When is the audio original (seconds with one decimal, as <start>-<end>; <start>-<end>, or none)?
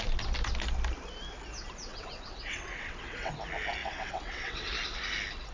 0.0-1.9; 3.3-3.8; 4.7-5.5